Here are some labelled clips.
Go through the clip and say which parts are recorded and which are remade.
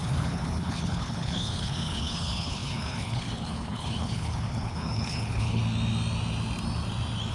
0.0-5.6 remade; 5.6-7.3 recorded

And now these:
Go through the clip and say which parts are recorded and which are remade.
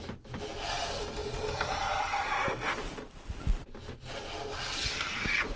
0.0-5.6 recorded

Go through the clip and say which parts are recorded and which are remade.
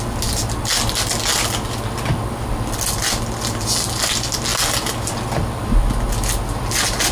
0.0-7.1 recorded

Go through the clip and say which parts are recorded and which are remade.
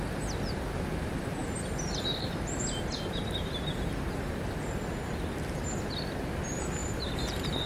0.0-1.4 recorded; 1.4-4.6 remade; 4.6-6.8 recorded; 6.8-7.7 remade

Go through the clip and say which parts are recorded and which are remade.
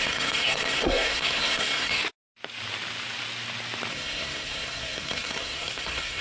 0.0-2.0 remade; 2.0-3.9 recorded; 3.9-6.2 remade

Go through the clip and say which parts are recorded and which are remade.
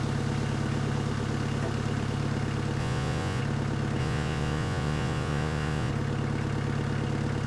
0.0-2.8 recorded; 2.8-3.4 remade; 3.4-4.0 recorded; 4.0-5.9 remade; 5.9-7.5 recorded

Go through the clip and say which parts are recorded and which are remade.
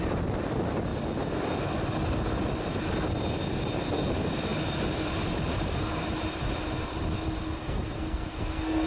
0.0-7.6 recorded; 7.6-8.9 remade